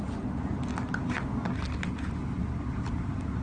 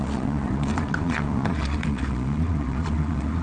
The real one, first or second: first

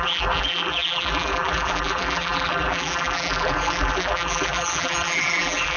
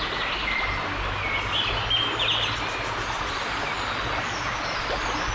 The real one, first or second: second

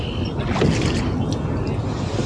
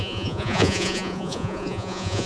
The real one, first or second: first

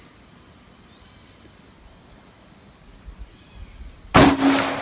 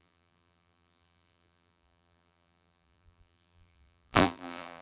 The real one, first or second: first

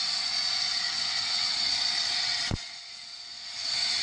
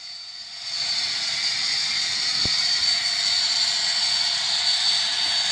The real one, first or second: second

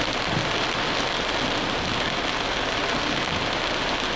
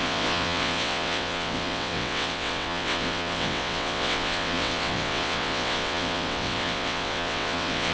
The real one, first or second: first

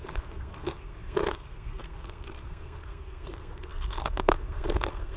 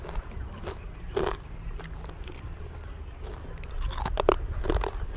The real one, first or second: second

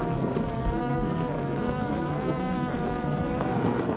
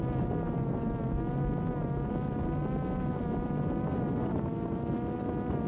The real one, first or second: second